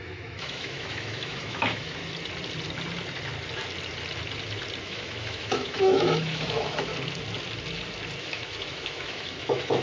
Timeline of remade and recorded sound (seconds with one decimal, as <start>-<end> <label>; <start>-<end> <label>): 0.0-2.0 remade; 2.0-4.8 recorded; 4.8-6.9 remade; 6.9-8.2 recorded; 8.2-9.8 remade